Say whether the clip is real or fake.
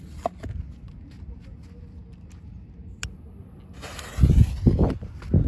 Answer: real